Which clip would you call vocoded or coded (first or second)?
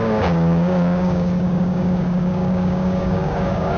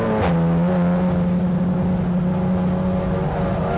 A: first